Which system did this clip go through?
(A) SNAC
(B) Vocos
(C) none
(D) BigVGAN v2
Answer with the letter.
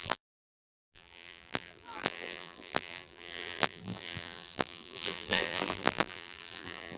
D